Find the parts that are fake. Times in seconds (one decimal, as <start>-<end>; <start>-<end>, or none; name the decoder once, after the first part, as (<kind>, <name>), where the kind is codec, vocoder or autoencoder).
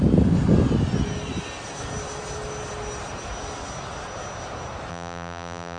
4.9-5.8 (vocoder, BigVGAN v2)